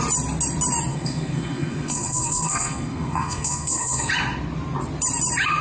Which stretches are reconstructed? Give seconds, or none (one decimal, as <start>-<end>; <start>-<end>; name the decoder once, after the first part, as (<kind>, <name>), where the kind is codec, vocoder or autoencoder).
0.9-4.1 (codec, SNAC)